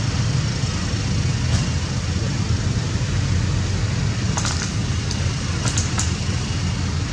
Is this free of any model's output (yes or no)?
yes